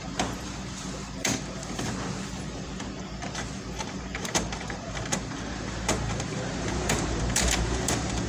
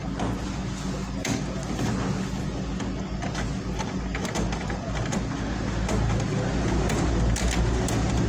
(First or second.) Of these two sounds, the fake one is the first